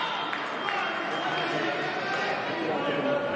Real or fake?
real